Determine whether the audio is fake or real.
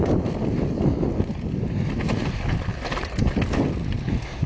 real